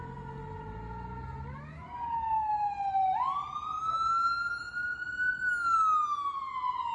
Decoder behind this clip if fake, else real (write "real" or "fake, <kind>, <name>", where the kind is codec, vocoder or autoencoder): real